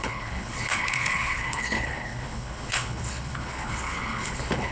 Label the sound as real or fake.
fake